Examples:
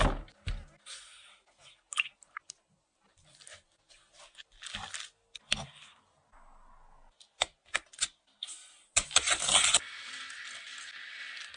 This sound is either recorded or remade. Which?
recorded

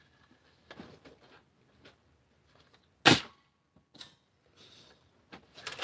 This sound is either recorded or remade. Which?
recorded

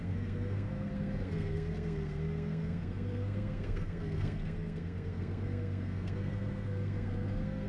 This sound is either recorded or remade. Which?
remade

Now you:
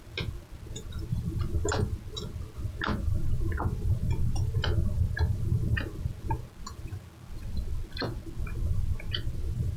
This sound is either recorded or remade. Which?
recorded